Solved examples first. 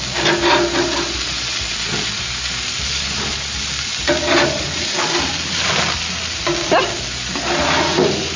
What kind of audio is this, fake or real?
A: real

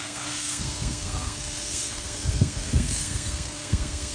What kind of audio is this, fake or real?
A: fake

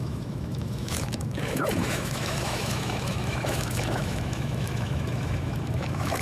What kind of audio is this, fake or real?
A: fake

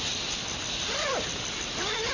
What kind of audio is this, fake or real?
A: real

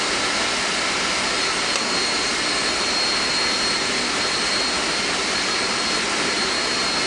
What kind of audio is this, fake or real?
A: real